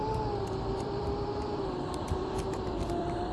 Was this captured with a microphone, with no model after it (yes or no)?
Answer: no